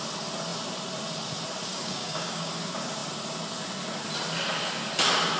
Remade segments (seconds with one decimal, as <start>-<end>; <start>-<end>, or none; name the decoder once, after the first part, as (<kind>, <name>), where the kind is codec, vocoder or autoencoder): 1.7-2.5 (codec, DAC)